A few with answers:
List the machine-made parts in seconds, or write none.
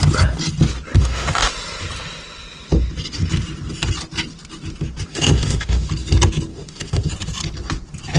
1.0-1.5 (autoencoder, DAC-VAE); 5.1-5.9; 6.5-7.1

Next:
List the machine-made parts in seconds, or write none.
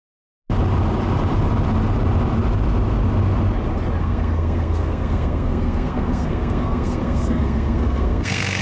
4.0-8.6 (codec, SNAC)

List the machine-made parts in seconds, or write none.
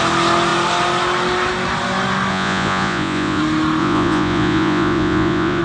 2.3-3.4 (vocoder, Vocos); 3.8-5.6